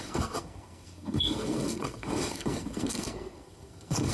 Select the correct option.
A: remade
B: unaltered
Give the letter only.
A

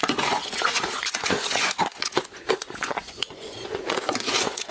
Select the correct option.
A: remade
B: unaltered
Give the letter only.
A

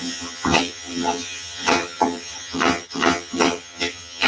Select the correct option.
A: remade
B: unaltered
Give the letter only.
A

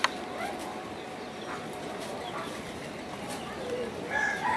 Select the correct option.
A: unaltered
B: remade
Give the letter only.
B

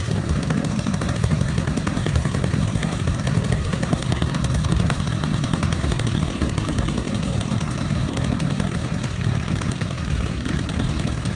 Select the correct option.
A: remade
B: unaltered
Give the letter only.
A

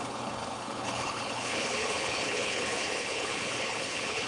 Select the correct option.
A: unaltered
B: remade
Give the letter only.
B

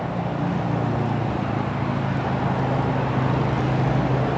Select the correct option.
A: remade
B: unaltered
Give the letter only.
B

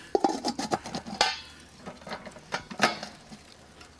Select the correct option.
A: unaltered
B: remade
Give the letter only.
A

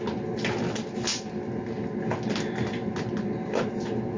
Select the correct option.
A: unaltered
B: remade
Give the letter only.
A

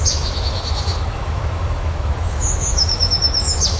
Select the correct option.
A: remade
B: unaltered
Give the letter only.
A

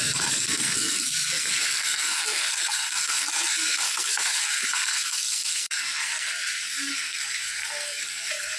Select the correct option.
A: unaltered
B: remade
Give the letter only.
B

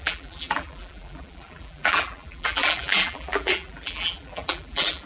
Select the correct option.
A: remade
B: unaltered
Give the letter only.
A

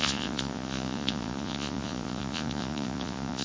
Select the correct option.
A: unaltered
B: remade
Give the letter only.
B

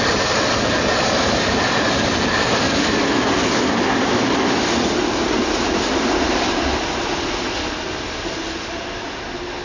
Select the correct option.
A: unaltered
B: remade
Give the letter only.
A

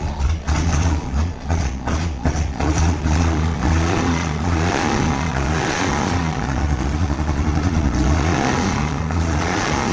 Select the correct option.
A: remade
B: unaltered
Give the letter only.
A